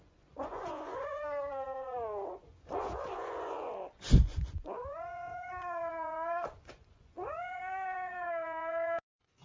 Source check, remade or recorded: remade